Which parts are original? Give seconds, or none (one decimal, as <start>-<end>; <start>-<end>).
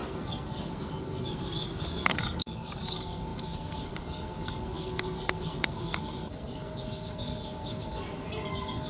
none